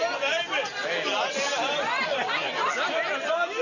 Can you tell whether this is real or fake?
real